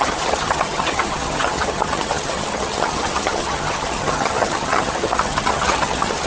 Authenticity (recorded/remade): remade